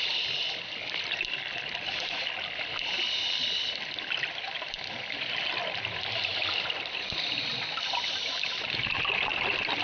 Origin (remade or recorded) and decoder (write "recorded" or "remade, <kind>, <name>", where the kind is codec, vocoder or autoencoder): recorded